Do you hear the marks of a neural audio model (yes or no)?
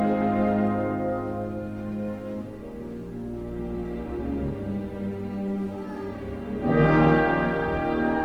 no